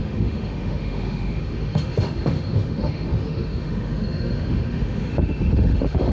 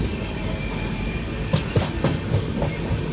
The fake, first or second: first